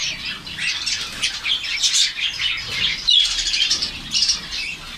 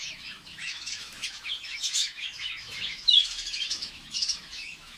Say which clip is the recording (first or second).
first